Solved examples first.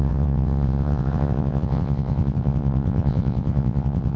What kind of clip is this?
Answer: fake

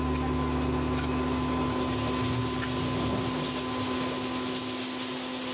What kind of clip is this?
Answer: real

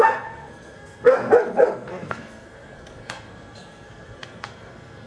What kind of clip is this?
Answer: fake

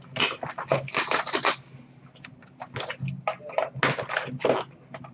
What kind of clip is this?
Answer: real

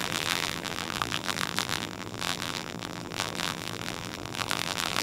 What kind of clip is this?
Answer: fake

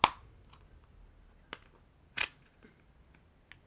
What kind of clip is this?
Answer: real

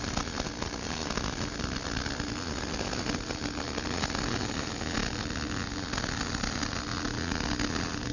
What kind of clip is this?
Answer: real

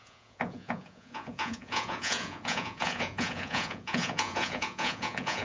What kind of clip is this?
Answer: fake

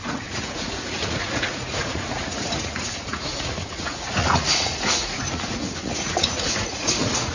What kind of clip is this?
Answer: fake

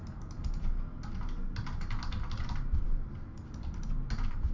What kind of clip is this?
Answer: real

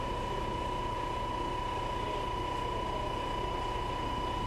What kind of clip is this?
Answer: real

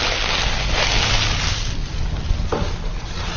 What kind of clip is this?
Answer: real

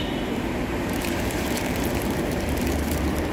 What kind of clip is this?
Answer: fake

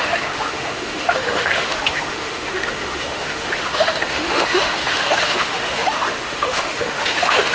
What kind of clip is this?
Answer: fake